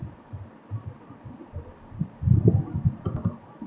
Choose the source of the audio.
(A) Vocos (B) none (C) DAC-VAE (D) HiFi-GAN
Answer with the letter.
B